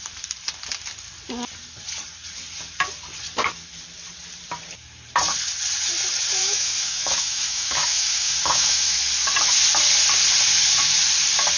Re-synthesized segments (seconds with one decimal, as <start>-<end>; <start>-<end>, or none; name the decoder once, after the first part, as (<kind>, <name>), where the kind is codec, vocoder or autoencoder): 6.4-9.0 (autoencoder, DAC-VAE)